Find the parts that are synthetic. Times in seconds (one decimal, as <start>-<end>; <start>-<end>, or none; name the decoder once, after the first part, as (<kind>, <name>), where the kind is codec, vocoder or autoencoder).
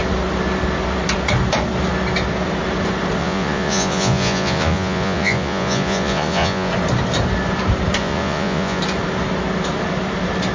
3.2-6.7 (vocoder, Vocos); 8.0-8.8